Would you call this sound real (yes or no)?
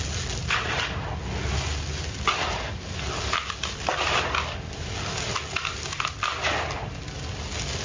yes